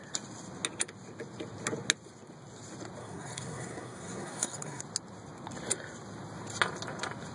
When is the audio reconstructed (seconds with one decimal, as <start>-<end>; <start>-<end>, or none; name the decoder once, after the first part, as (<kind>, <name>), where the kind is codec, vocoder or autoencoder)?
3.0-4.8 (codec, SNAC)